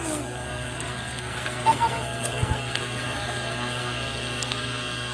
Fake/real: fake